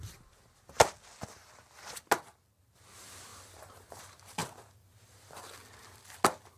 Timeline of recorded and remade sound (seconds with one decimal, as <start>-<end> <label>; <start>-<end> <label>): 0.0-3.3 recorded; 3.3-4.0 remade; 4.0-6.6 recorded